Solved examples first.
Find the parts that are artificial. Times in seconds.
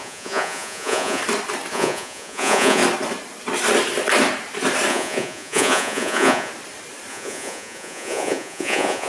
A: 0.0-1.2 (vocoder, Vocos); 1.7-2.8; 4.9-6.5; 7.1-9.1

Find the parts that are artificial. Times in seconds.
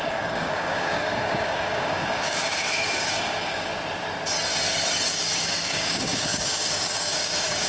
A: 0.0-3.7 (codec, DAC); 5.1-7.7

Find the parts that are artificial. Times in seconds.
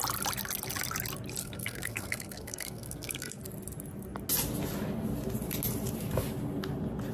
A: 1.4-3.4 (codec, SNAC)